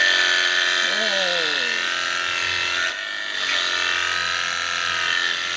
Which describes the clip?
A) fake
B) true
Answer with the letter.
B